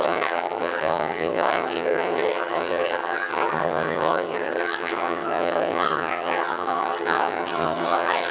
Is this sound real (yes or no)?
no